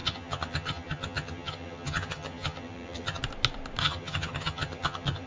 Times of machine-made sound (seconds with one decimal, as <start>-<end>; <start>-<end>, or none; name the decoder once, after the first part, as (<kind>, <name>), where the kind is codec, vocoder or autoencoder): 0.0-3.2 (vocoder, HiFi-GAN); 3.8-5.3